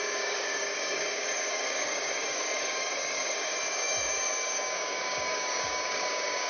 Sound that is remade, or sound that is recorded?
remade